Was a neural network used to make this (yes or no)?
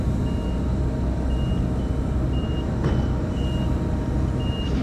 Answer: no